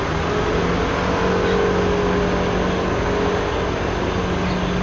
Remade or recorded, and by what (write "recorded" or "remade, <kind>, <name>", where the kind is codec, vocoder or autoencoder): recorded